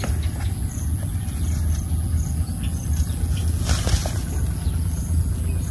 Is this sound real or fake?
real